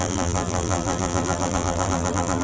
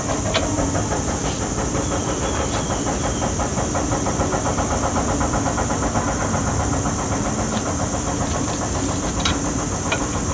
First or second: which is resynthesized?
first